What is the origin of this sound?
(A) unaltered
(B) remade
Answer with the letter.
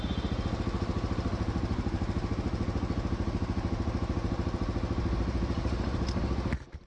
A